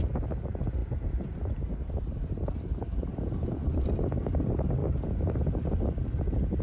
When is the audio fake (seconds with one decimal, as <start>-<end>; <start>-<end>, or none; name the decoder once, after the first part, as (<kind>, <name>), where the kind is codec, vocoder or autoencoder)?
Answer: none

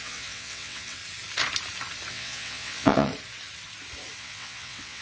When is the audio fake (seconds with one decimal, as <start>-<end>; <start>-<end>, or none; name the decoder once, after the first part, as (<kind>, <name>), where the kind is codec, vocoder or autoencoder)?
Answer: 0.0-1.0 (vocoder, WaveNeXt); 2.1-3.1; 4.2-5.0